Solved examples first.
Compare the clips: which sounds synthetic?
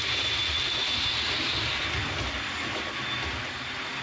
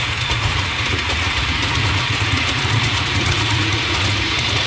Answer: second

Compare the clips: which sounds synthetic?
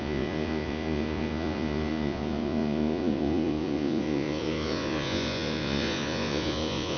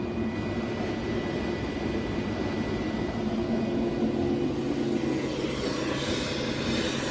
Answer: first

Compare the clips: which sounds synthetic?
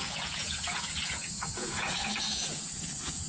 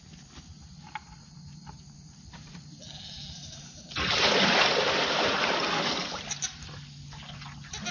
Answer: first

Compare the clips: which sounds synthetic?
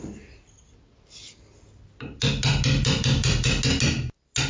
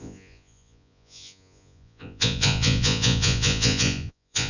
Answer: second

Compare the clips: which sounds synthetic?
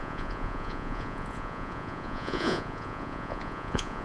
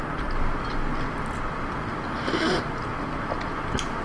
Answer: first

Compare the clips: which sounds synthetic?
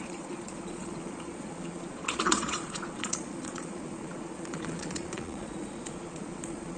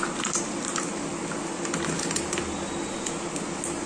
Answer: first